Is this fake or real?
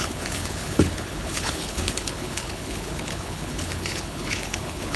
fake